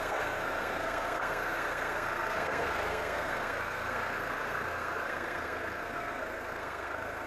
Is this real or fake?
fake